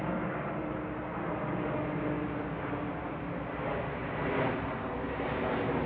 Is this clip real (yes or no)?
yes